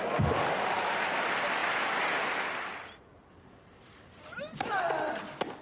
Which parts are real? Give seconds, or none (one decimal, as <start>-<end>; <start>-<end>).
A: 0.0-1.6; 4.8-5.6